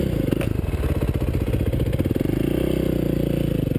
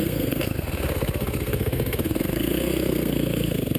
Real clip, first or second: first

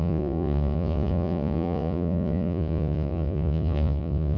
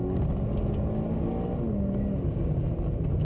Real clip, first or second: second